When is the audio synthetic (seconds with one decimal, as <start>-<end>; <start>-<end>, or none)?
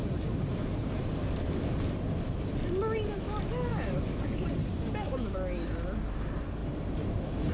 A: 0.0-1.0; 6.6-7.5